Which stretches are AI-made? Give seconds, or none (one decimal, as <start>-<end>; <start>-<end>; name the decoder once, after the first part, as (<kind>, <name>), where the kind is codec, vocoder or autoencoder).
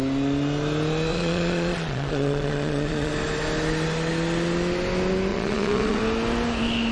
1.1-3.1 (vocoder, Vocos); 5.3-6.0